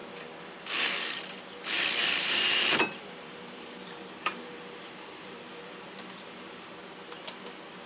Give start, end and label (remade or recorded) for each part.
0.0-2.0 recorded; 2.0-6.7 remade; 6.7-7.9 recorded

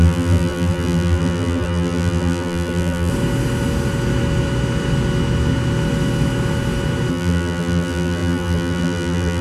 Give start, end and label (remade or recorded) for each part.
0.0-3.1 remade; 3.1-7.1 recorded; 7.1-9.4 remade